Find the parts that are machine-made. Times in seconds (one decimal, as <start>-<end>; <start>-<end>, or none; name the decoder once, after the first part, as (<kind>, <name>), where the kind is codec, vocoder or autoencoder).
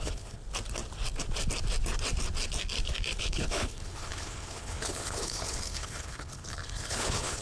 0.0-0.4 (codec, HILCodec); 3.2-7.4